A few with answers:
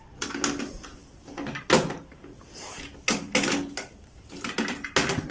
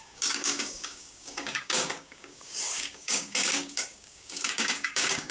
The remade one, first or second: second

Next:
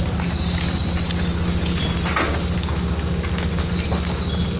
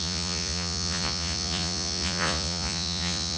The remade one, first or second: second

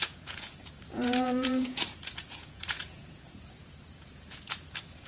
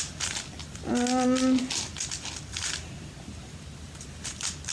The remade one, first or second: first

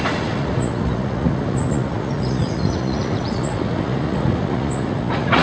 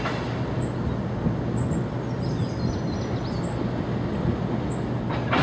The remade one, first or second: first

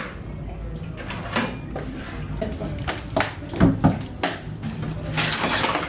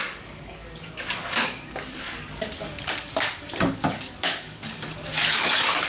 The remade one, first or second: second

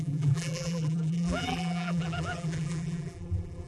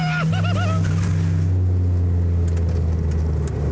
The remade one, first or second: first